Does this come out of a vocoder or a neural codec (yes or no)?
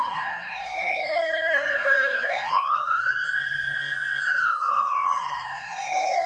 yes